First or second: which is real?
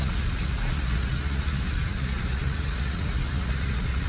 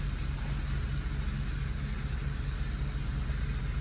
second